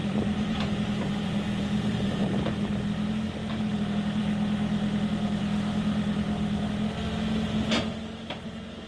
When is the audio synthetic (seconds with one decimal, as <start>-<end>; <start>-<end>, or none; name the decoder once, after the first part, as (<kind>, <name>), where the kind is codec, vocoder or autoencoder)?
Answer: 0.0-2.7 (vocoder, BigVGAN v2)